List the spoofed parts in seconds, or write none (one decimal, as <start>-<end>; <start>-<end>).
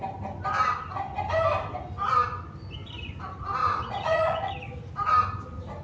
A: 3.6-4.5